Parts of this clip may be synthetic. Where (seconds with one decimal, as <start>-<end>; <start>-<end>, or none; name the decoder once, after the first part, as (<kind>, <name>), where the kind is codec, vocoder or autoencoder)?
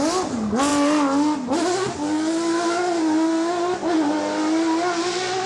none